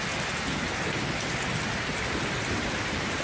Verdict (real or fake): real